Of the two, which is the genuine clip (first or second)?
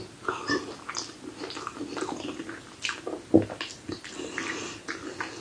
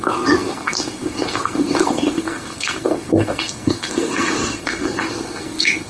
first